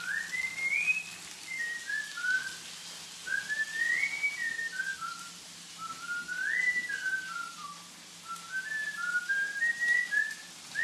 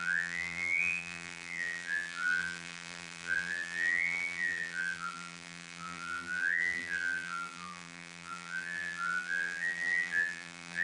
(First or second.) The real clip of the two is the first